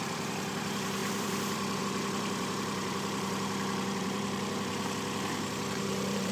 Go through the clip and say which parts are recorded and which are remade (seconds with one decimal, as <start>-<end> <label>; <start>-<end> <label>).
0.0-4.7 remade; 4.7-5.8 recorded; 5.8-6.3 remade